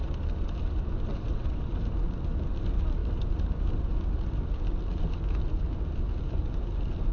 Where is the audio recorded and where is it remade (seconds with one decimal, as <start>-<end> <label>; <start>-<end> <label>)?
0.0-1.1 recorded; 1.1-1.7 remade; 1.7-7.1 recorded